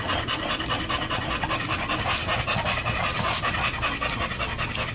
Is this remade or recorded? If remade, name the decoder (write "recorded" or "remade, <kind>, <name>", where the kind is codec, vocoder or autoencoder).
recorded